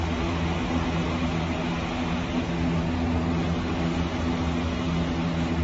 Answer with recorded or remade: recorded